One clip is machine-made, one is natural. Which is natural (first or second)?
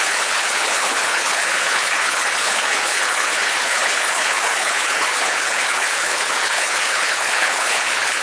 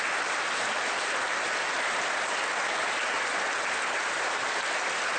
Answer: second